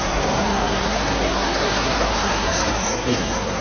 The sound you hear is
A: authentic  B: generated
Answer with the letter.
B